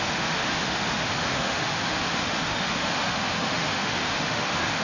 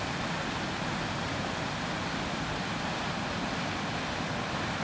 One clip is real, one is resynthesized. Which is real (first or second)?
second